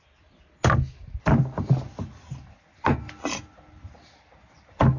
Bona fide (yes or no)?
yes